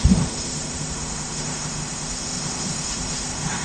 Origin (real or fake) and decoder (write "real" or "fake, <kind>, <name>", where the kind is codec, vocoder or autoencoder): fake, autoencoder, DAC-VAE